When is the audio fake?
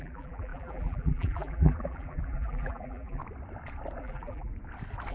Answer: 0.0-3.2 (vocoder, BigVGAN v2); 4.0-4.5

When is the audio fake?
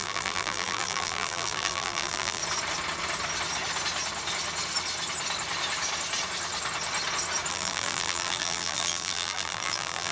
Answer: 0.0-2.4 (vocoder, BigVGAN v2); 7.5-10.1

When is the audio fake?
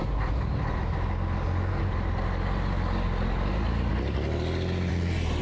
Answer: none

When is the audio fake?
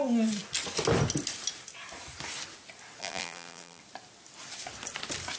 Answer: 3.0-3.8 (vocoder, BigVGAN v2)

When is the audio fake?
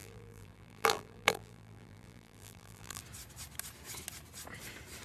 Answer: 0.0-3.0 (vocoder, BigVGAN v2)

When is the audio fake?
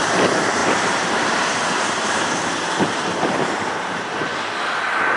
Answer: 0.0-4.3 (vocoder, BigVGAN v2)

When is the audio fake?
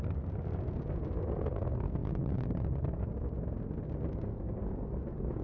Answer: 2.0-3.1 (vocoder, BigVGAN v2)